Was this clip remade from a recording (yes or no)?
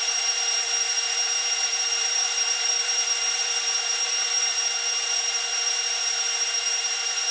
yes